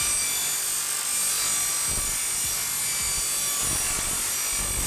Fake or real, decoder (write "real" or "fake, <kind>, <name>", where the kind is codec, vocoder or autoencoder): real